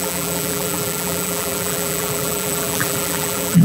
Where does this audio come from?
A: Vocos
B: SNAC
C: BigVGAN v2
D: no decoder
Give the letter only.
C